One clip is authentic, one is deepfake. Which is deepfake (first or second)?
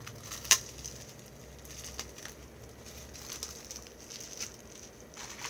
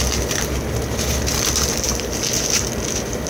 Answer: second